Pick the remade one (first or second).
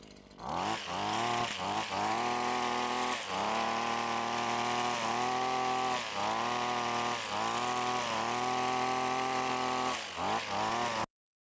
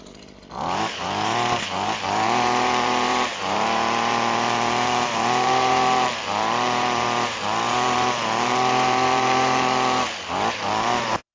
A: second